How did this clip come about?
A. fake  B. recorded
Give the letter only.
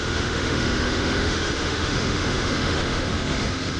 A